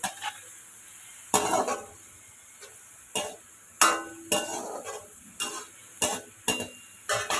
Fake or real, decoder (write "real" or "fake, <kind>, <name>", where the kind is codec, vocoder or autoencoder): real